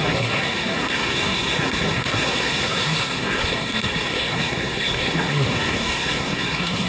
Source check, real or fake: fake